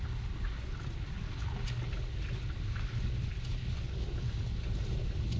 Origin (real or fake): real